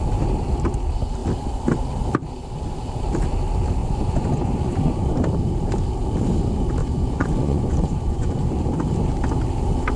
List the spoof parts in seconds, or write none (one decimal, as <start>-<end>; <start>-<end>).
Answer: 3.8-5.2; 6.8-8.5